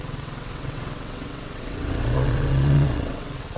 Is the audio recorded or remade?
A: remade